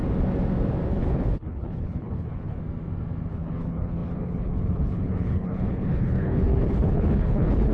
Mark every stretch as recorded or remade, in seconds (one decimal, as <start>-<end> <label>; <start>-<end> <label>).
0.0-0.9 recorded; 0.9-2.6 remade; 2.6-3.3 recorded; 3.3-7.7 remade